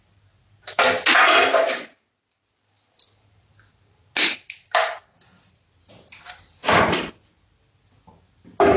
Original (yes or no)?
yes